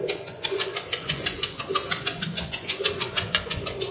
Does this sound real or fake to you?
fake